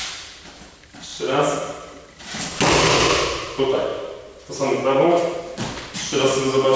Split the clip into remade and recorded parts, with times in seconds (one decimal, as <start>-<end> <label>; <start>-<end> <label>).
0.0-1.1 recorded; 1.1-2.7 remade; 2.7-6.8 recorded